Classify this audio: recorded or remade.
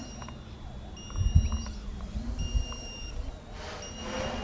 recorded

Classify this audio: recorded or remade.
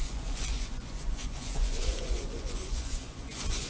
remade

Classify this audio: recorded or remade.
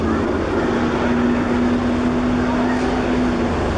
recorded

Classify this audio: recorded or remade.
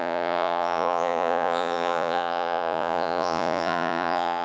remade